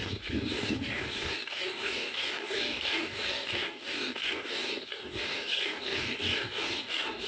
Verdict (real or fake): fake